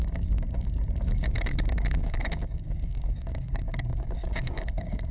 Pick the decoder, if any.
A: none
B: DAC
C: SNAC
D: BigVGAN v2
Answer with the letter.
B